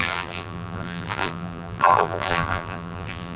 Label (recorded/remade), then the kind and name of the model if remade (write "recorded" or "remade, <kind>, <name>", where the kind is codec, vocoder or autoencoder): remade, vocoder, BigVGAN v2